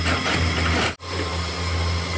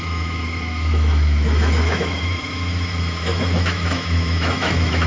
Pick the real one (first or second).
first